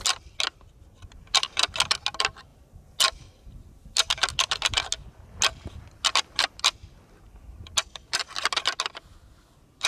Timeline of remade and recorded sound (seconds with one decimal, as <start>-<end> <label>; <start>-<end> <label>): 0.0-2.5 recorded; 2.5-3.8 remade; 3.8-9.9 recorded